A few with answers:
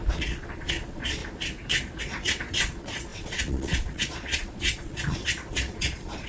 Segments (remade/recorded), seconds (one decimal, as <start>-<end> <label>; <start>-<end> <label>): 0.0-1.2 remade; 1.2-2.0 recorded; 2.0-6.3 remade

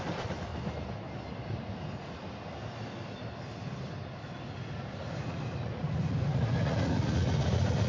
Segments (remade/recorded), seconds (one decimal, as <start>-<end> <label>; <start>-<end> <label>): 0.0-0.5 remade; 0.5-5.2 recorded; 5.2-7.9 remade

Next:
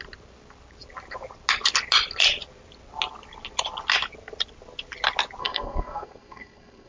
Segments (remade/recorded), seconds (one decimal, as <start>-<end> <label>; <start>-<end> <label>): 0.0-5.4 recorded; 5.4-6.9 remade

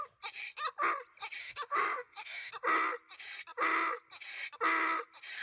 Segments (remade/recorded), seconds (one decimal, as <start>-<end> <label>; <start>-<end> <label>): 0.0-1.4 recorded; 1.4-2.5 remade; 2.5-5.4 recorded

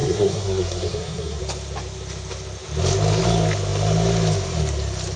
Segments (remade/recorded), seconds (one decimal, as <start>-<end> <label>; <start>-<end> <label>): 0.0-1.4 remade; 1.4-5.2 recorded

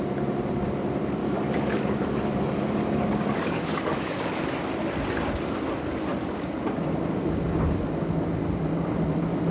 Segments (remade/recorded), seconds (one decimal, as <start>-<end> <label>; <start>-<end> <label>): 0.0-1.2 recorded; 1.2-4.4 remade; 4.4-9.5 recorded

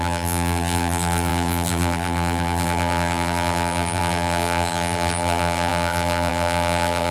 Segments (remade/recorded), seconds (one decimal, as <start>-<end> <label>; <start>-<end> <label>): 0.0-7.1 remade